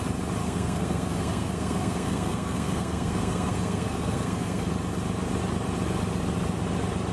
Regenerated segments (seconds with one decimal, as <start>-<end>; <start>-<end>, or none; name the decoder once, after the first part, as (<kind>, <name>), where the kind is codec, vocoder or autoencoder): 0.4-4.7 (codec, SNAC)